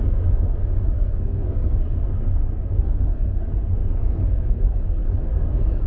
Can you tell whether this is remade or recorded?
remade